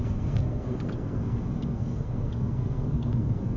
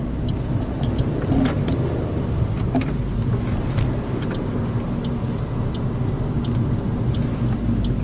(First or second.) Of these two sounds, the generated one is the first